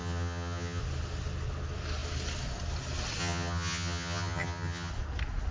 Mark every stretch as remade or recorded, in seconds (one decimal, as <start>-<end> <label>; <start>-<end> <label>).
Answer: 0.0-0.8 remade; 0.8-3.2 recorded; 3.2-4.9 remade; 4.9-5.5 recorded